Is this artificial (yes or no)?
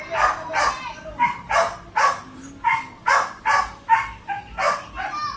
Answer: no